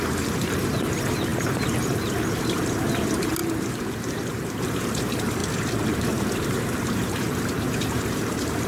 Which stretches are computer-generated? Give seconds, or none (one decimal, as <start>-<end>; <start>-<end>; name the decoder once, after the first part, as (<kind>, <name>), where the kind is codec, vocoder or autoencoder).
0.0-5.4 (vocoder, BigVGAN v2); 5.9-8.7